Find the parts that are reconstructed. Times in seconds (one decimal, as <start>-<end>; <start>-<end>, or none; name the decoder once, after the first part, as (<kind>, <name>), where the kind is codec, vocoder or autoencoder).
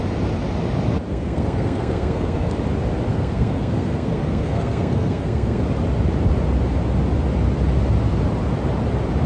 1.1-2.5 (codec, SNAC); 3.1-5.6